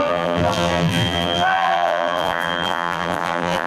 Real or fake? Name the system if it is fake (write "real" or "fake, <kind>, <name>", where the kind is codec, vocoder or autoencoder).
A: fake, vocoder, BigVGAN v2